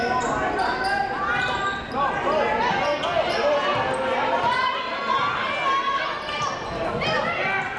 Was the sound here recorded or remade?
recorded